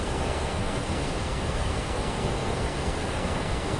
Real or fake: fake